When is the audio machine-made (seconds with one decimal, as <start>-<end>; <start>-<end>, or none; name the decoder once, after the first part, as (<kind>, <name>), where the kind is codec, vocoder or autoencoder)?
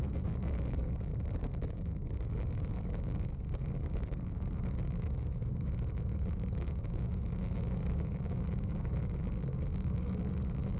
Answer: 0.0-1.1 (codec, DAC); 1.7-10.8